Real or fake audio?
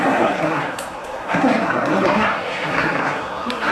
fake